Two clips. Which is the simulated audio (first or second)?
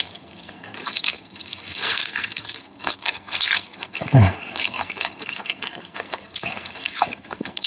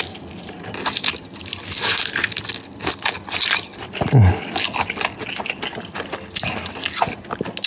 first